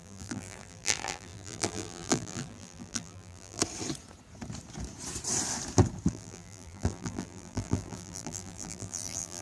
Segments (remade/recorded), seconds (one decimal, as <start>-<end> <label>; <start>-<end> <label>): 0.0-3.6 remade; 3.6-6.1 recorded; 6.1-9.4 remade